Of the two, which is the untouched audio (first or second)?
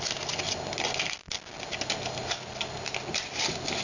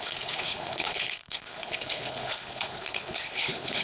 first